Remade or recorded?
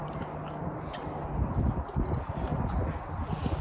recorded